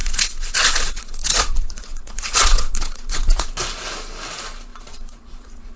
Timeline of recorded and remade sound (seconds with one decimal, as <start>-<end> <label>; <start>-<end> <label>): 0.0-3.5 remade; 3.5-4.7 recorded; 4.7-5.8 remade